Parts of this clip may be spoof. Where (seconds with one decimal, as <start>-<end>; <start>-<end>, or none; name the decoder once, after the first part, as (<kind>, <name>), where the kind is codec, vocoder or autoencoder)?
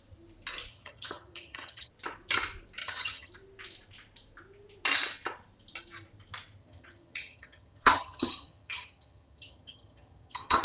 0.7-1.9 (vocoder, HiFi-GAN); 2.8-3.3; 6.6-10.6